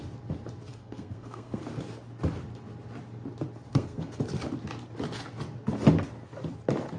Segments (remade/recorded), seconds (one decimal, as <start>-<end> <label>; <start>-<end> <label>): 0.0-0.7 recorded; 0.7-1.6 remade; 1.6-3.7 recorded; 3.7-4.2 remade; 4.2-7.0 recorded